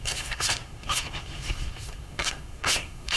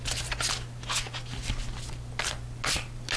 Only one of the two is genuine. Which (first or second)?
second